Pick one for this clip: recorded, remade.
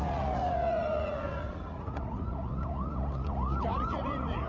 remade